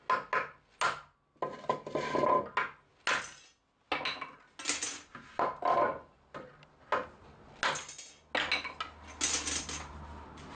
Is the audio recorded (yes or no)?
yes